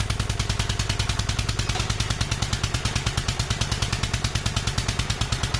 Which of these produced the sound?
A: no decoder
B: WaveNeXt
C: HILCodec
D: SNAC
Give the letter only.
A